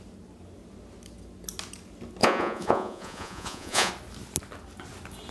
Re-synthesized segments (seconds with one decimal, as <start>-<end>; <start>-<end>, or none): 2.2-3.9